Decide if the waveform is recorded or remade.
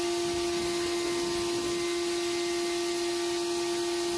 recorded